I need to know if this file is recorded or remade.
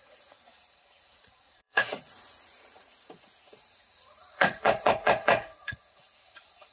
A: remade